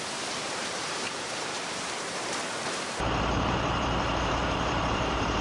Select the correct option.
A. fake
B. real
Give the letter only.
A